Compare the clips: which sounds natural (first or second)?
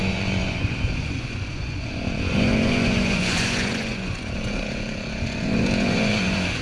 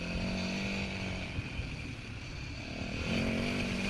second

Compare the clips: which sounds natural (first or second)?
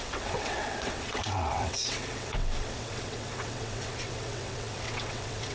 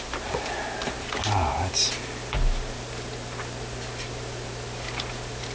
second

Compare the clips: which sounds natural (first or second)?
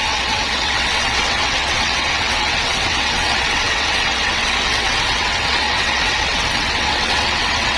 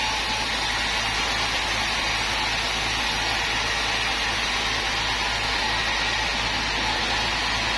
second